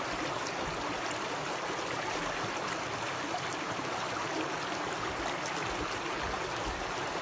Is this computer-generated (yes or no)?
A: no